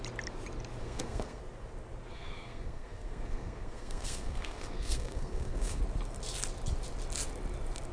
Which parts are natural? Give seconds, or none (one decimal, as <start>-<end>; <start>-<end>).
0.0-0.8; 1.4-2.1; 5.8-7.9